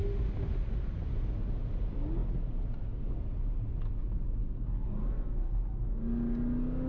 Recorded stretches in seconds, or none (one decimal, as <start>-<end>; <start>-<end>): 0.0-6.9